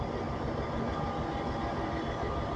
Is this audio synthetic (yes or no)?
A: no